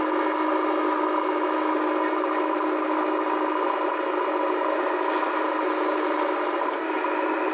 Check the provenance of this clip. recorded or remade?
recorded